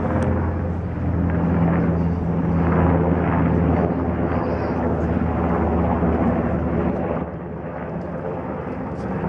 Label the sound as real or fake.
real